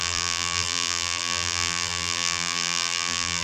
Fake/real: fake